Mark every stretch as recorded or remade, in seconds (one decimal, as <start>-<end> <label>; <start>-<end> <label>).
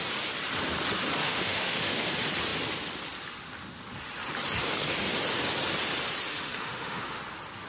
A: 0.0-1.2 recorded; 1.2-2.0 remade; 2.0-6.3 recorded; 6.3-7.2 remade; 7.2-7.7 recorded